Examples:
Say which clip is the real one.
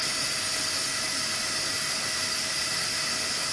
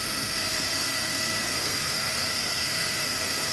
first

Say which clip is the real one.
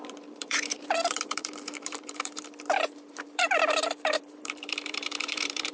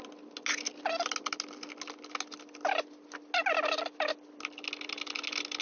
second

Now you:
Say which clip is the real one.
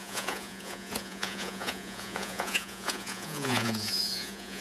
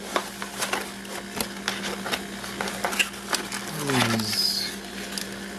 second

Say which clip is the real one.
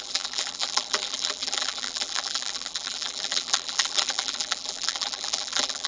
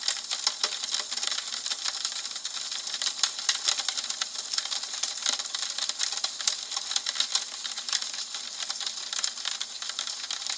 second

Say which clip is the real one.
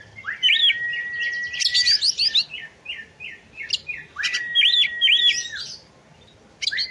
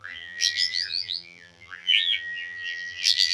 first